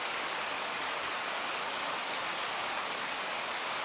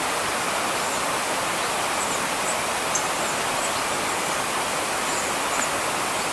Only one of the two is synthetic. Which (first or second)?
first